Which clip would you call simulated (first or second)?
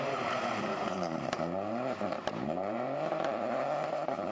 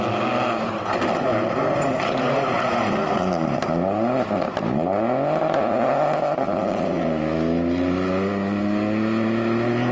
first